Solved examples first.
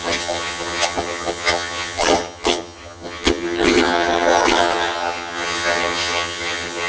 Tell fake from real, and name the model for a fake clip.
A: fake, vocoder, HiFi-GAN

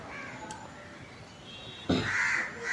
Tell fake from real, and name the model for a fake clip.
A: real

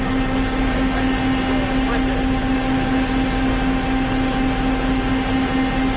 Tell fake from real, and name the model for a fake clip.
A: real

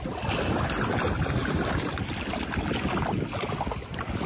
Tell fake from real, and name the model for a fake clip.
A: real